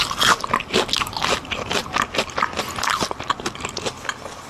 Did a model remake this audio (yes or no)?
no